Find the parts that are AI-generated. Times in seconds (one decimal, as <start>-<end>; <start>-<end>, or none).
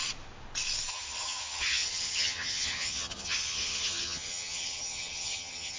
0.9-5.8